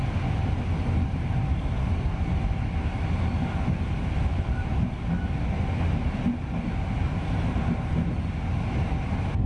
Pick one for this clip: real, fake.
real